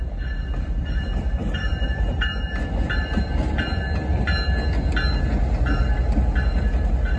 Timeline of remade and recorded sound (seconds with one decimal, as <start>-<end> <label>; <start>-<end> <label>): 0.0-1.4 recorded; 1.4-2.2 remade; 2.2-7.2 recorded